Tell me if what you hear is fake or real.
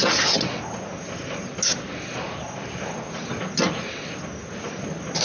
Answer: real